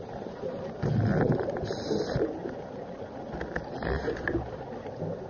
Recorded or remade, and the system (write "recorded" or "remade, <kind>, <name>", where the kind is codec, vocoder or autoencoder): recorded